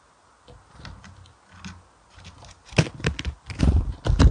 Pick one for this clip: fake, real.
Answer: real